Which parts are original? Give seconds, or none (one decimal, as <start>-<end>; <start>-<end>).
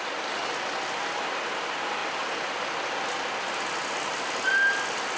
0.0-5.2